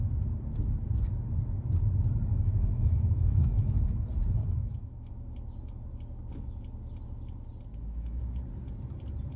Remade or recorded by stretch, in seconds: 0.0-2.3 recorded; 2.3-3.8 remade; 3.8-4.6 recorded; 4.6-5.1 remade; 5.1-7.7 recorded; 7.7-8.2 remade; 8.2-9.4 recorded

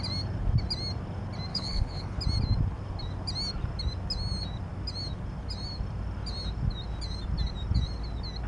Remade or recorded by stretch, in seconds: 0.0-1.5 recorded; 1.5-2.2 remade; 2.2-8.5 recorded

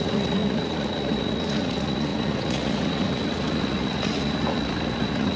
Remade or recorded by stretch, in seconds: 0.0-5.4 remade

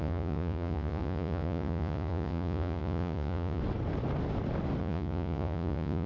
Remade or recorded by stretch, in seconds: 0.0-3.6 remade; 3.6-4.8 recorded; 4.8-6.1 remade

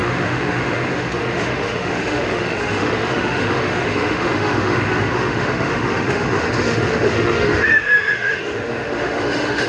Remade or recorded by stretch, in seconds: 0.0-9.7 remade

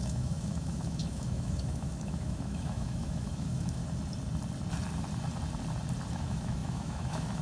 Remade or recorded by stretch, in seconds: 0.0-3.8 remade; 3.8-6.1 recorded; 6.1-7.4 remade